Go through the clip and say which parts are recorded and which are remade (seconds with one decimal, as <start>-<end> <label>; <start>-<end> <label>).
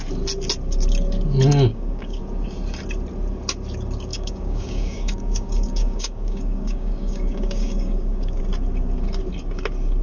0.0-1.7 recorded; 1.7-2.2 remade; 2.2-4.1 recorded; 4.1-8.4 remade; 8.4-10.0 recorded